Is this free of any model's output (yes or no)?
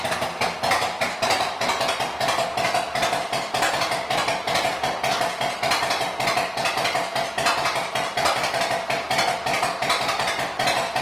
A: yes